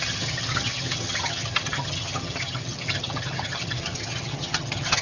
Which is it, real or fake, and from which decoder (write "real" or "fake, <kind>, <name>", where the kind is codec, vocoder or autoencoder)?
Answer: fake, vocoder, HiFi-GAN